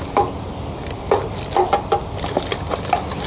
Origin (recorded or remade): recorded